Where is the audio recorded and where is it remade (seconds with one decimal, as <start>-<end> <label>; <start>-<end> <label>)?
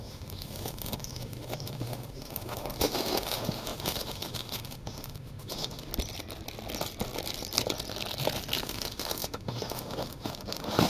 0.0-5.9 remade; 5.9-8.6 recorded; 8.6-10.9 remade